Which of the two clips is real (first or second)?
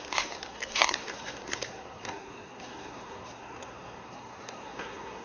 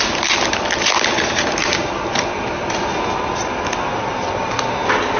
second